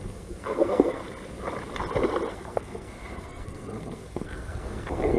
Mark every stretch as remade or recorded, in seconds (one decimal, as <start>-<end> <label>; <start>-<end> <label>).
0.0-1.0 remade; 1.0-2.3 recorded; 2.3-5.2 remade